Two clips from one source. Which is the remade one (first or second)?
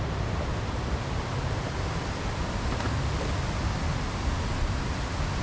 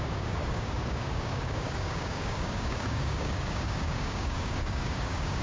second